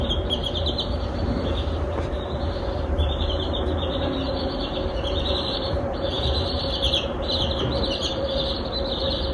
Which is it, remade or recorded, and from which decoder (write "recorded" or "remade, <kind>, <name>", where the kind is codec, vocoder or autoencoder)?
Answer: remade, vocoder, BigVGAN v2